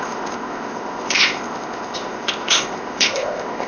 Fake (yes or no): yes